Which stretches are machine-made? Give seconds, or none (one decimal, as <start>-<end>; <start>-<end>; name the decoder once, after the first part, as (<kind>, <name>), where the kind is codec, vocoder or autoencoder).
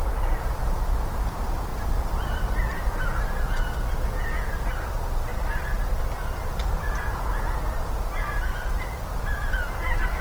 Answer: 1.7-3.4 (vocoder, BigVGAN v2); 5.3-6.0